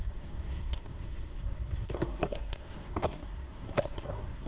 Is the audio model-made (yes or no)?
yes